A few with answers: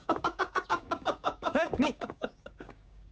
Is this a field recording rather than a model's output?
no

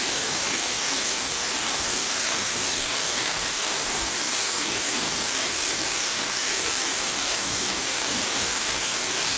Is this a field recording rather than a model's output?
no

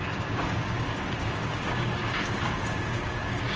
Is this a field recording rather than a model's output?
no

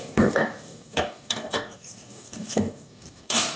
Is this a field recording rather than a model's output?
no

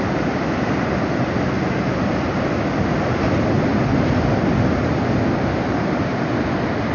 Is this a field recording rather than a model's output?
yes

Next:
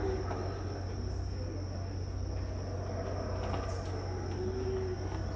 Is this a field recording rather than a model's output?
yes